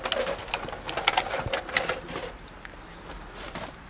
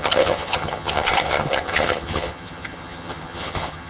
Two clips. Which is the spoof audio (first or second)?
second